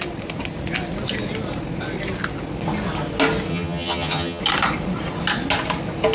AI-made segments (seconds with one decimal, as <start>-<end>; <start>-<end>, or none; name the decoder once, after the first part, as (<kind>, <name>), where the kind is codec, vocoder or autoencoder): 3.5-4.4 (vocoder, HiFi-GAN)